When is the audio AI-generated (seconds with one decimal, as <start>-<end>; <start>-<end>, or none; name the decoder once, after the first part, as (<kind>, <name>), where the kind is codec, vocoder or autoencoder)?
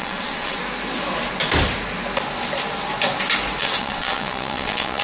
0.0-0.6 (vocoder, WaveNeXt); 3.6-5.0